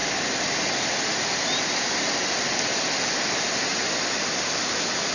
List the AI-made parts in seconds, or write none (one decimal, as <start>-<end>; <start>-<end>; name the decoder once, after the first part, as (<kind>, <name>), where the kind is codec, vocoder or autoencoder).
3.7-4.3 (vocoder, BigVGAN v2)

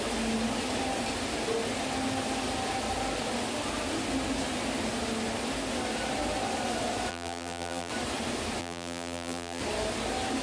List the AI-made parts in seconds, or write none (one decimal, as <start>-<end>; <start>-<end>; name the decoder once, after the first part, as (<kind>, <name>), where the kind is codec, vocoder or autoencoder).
7.1-7.9 (vocoder, BigVGAN v2); 8.6-9.6